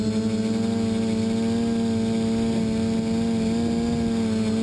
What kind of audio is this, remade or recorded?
recorded